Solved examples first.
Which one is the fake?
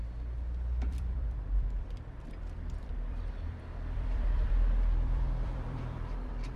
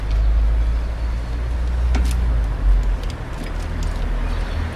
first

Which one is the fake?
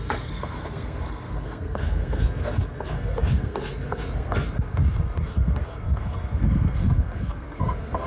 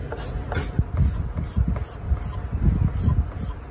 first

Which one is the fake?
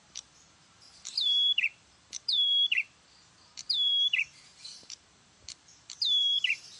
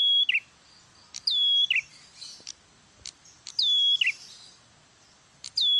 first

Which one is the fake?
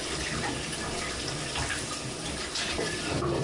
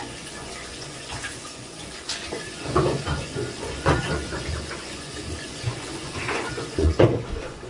second